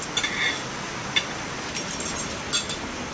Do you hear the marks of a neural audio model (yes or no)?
no